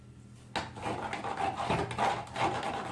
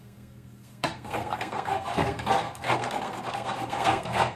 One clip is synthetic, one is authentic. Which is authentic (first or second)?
first